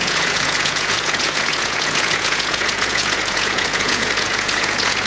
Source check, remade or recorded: remade